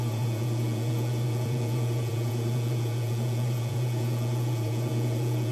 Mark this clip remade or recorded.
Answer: remade